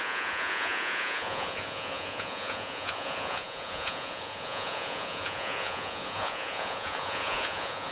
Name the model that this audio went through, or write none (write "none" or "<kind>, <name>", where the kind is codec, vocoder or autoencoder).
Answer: vocoder, Vocos